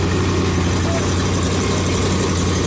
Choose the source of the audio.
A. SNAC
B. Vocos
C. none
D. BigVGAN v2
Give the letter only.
C